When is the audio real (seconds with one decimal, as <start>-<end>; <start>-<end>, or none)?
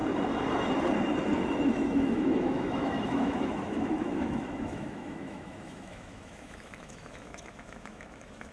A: 0.0-1.7